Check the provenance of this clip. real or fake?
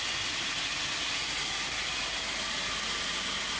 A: real